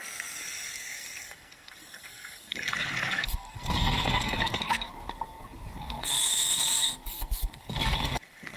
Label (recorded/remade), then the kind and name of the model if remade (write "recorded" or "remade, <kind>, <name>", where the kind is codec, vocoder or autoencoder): remade, codec, SNAC